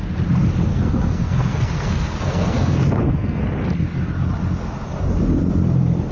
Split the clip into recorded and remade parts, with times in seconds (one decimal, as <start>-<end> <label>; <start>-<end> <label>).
0.0-0.7 recorded; 0.7-3.4 remade; 3.4-6.1 recorded

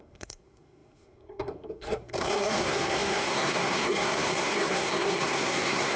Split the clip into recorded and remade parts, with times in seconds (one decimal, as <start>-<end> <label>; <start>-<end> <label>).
0.0-6.0 remade

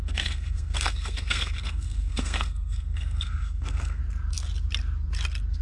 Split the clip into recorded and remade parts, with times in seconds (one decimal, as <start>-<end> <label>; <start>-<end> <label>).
0.0-4.0 remade; 4.0-5.6 recorded